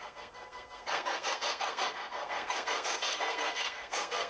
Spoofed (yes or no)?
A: yes